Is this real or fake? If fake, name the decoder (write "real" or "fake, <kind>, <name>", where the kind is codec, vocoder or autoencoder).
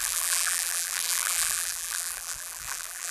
fake, vocoder, BigVGAN v2